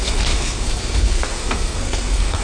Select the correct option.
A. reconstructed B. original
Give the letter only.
A